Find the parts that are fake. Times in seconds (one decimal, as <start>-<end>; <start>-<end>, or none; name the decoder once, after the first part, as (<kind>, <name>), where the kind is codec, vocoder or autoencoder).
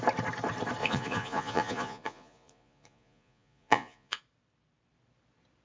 0.8-4.2 (vocoder, Vocos)